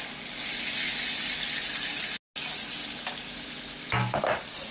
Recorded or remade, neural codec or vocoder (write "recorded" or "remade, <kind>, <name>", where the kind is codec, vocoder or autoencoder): recorded